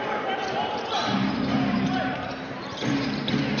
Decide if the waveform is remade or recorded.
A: remade